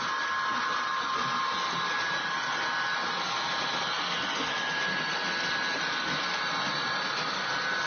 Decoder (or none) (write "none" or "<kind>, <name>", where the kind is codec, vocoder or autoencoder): none